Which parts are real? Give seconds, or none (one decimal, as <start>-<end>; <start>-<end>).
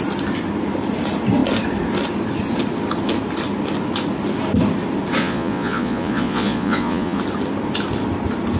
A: 0.0-5.2; 7.2-8.6